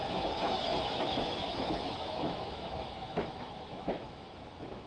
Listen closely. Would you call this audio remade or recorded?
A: remade